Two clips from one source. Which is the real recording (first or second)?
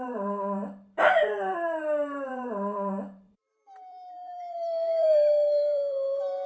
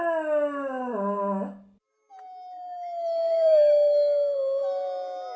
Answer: second